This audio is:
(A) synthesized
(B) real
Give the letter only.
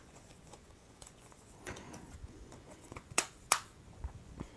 A